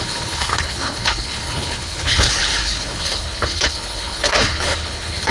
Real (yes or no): no